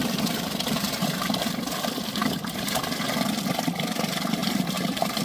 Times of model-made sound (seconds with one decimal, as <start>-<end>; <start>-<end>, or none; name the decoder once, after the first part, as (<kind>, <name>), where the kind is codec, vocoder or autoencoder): 0.0-1.5 (vocoder, BigVGAN v2); 4.4-5.2